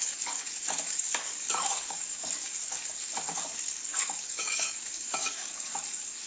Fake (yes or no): yes